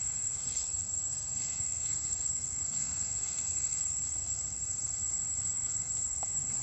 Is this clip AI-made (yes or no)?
yes